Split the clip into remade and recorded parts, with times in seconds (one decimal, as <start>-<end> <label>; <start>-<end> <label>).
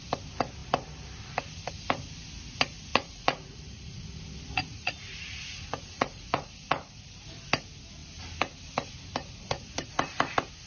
0.0-2.9 recorded; 2.9-4.2 remade; 4.2-4.7 recorded; 4.7-6.6 remade; 6.6-10.7 recorded